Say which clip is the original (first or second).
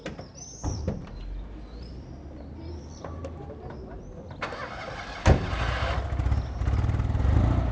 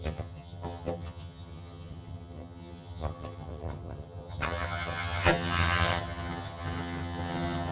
first